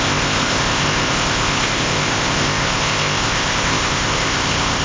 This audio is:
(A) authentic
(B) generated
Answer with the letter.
B